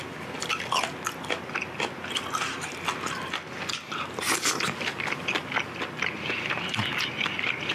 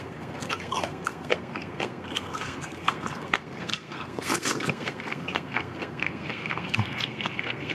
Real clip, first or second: first